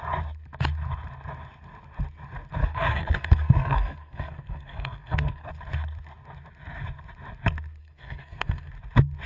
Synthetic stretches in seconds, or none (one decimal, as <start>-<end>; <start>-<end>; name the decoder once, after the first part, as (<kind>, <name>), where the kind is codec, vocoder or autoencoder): 2.6-5.5 (codec, SNAC); 7.8-8.7